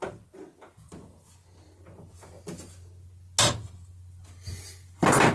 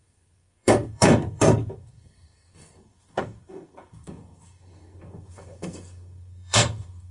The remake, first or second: second